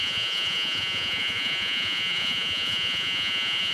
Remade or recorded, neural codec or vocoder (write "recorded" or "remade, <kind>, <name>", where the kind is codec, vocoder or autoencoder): remade, vocoder, Vocos